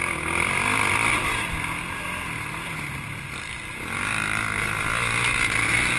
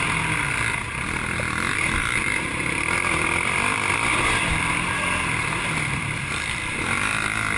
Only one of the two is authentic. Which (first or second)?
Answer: first